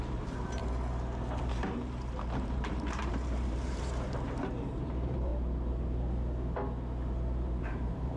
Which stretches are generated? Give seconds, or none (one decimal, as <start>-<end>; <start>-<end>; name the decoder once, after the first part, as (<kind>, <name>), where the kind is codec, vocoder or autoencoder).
0.0-0.6 (vocoder, BigVGAN v2); 1.4-5.3; 7.6-8.2